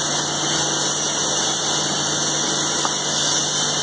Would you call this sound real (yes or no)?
yes